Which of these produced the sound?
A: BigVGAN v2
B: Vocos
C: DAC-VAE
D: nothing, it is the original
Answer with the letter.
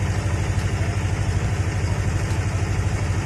D